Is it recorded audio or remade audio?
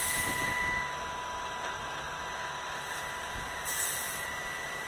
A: recorded